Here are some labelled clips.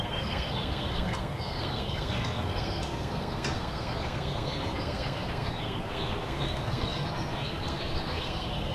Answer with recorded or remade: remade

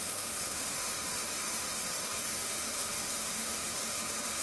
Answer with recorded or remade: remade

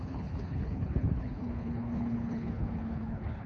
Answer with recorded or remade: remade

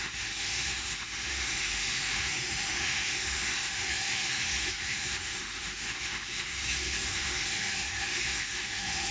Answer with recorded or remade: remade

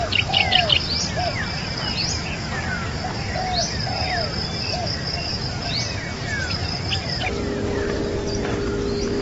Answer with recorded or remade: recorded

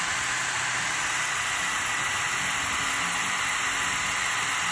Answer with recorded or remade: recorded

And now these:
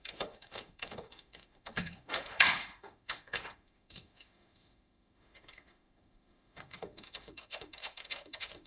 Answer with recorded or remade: remade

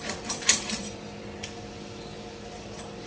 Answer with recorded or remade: recorded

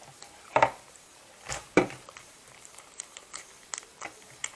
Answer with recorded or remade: remade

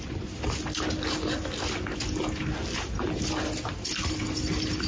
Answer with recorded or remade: recorded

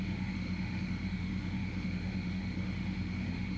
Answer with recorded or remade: remade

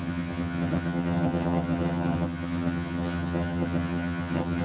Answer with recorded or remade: remade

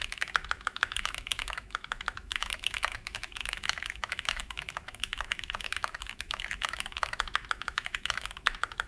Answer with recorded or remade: remade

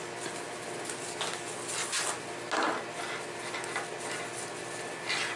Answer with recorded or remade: recorded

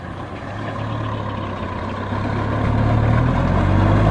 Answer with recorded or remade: recorded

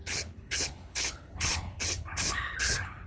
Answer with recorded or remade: remade